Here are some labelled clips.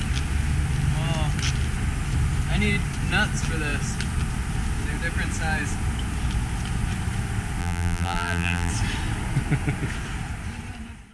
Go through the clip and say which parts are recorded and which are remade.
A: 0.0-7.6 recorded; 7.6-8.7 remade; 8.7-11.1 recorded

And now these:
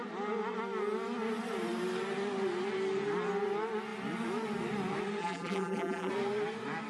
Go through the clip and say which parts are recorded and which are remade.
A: 0.0-5.2 recorded; 5.2-6.1 remade; 6.1-6.9 recorded